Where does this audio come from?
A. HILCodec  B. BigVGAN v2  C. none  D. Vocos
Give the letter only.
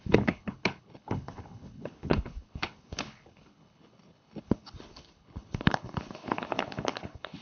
A